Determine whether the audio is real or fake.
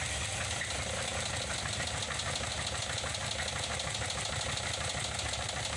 real